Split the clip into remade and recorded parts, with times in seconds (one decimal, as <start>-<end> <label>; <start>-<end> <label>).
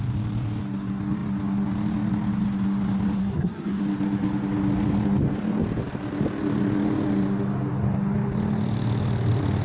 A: 0.0-3.2 recorded; 3.2-3.8 remade; 3.8-9.6 recorded